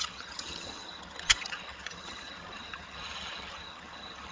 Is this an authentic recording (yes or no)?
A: no